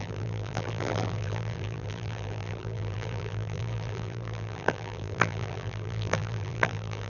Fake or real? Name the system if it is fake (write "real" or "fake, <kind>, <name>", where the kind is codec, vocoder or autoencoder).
fake, vocoder, BigVGAN v2